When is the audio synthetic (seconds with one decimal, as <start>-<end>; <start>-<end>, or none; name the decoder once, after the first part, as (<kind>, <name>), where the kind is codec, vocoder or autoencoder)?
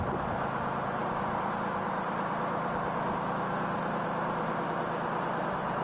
none